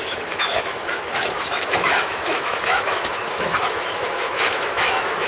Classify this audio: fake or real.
fake